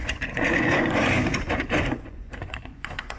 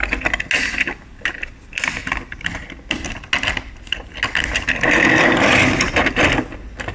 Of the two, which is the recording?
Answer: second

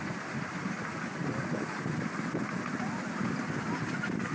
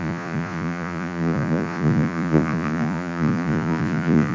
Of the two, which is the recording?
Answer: first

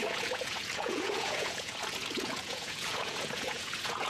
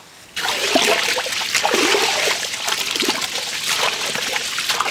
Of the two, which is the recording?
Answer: second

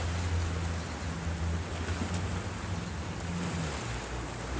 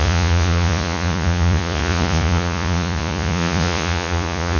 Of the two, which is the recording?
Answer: first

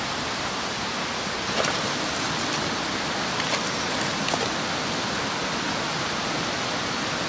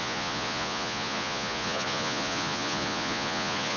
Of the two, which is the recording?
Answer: first